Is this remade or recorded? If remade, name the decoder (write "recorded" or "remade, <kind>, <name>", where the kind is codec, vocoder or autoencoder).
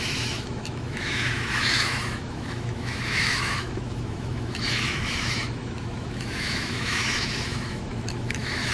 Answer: remade, autoencoder, DAC-VAE